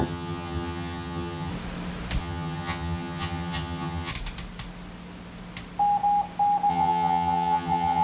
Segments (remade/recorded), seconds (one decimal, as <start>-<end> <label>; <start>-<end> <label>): 0.0-1.5 remade; 1.5-2.2 recorded; 2.2-4.1 remade; 4.1-6.7 recorded; 6.7-8.0 remade